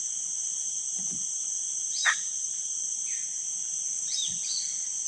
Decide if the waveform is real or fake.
fake